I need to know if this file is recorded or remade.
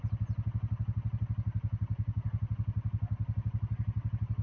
recorded